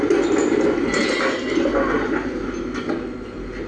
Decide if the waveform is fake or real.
real